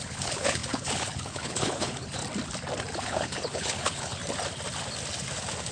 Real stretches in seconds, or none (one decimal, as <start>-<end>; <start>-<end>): 2.2-3.0; 4.2-5.7